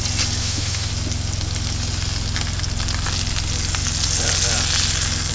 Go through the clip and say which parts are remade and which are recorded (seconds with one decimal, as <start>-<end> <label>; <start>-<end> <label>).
0.0-0.4 recorded; 0.4-0.9 remade; 0.9-5.3 recorded